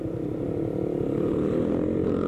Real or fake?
real